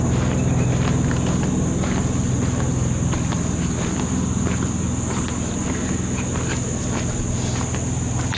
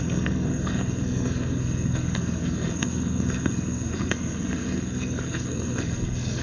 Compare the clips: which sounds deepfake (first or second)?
second